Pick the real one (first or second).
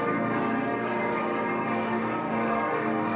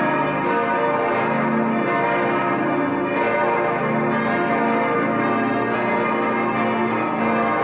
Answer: second